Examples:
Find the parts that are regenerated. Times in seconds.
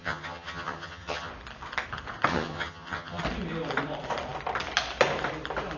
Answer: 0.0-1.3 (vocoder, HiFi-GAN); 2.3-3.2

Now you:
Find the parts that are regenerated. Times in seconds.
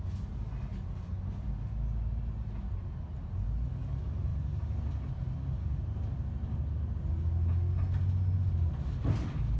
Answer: none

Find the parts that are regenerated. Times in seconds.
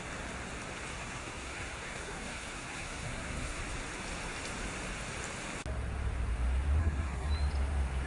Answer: 0.9-3.6 (codec, SNAC); 6.8-7.3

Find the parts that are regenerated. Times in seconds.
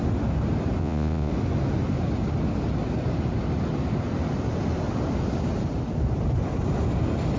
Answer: 0.8-1.3 (vocoder, Vocos)